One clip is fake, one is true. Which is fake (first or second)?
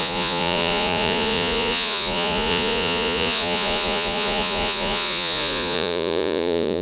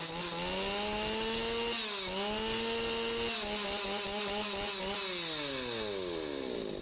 first